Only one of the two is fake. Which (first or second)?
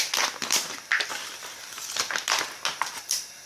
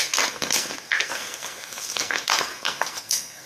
second